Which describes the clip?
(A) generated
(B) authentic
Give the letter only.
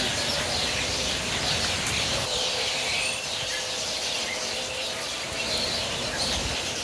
A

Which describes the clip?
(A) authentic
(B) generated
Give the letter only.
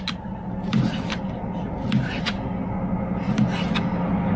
A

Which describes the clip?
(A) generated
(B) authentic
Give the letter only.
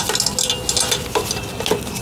B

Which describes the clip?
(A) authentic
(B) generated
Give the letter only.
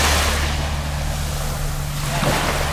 A